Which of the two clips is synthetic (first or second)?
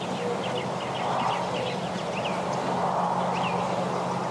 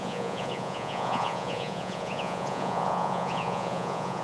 second